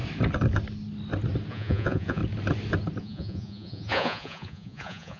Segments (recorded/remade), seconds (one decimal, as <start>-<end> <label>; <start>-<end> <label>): 0.0-1.5 recorded; 1.5-2.2 remade; 2.2-3.0 recorded; 3.0-5.2 remade